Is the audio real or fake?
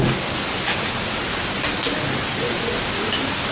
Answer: real